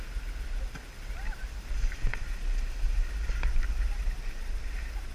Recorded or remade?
recorded